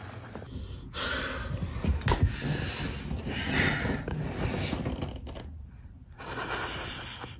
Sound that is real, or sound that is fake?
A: real